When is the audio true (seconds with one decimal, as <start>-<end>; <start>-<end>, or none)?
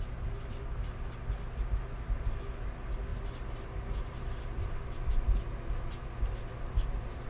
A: 0.0-7.3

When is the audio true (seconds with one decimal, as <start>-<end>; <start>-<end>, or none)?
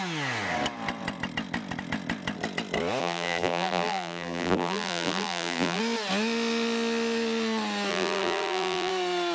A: 0.0-3.0; 5.8-7.9; 8.9-9.3